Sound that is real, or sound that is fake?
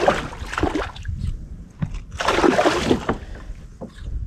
real